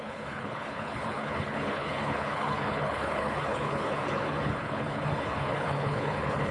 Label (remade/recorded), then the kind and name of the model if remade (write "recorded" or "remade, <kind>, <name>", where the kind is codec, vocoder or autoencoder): remade, codec, HILCodec